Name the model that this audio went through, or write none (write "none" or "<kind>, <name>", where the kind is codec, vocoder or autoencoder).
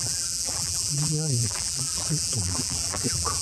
vocoder, BigVGAN v2